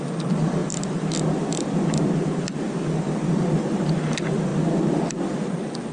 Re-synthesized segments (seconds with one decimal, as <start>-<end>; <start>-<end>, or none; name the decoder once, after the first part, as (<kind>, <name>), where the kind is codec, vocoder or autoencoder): none